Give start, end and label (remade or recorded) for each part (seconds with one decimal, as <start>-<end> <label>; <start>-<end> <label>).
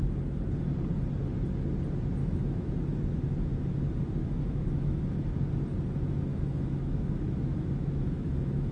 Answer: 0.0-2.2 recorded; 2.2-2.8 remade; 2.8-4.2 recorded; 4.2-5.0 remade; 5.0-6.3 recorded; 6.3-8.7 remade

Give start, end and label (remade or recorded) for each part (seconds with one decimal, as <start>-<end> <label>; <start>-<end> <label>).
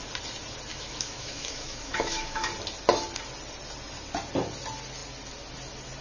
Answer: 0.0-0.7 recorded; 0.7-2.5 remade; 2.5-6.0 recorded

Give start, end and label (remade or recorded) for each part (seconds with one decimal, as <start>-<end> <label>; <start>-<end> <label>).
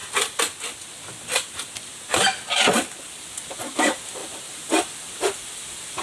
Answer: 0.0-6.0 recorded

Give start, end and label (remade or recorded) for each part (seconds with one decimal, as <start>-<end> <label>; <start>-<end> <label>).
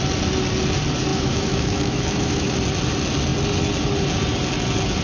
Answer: 0.0-1.1 recorded; 1.1-2.6 remade; 2.6-5.0 recorded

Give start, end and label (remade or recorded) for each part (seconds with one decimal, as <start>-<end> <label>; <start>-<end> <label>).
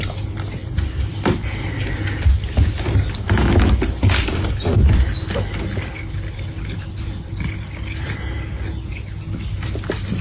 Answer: 0.0-10.2 recorded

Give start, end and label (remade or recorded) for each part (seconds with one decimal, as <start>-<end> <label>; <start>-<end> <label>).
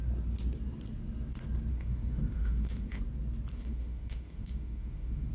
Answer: 0.0-1.7 recorded; 1.7-3.0 remade; 3.0-3.5 recorded; 3.5-5.3 remade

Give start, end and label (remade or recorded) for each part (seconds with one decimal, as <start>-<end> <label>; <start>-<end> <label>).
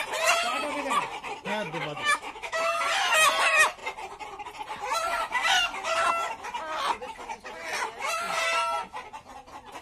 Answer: 0.0-1.5 recorded; 1.5-2.8 remade; 2.8-9.8 recorded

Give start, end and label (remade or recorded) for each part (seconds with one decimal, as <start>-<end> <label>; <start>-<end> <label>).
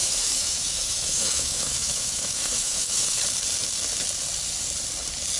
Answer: 0.0-3.2 remade; 3.2-5.4 recorded